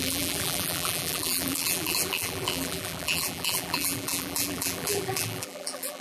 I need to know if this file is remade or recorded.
remade